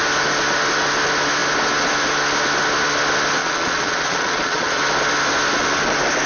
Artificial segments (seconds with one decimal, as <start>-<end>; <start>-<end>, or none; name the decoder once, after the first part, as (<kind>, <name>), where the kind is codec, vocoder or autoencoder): 3.4-4.8 (vocoder, Vocos)